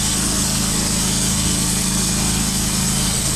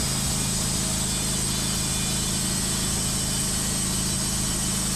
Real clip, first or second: second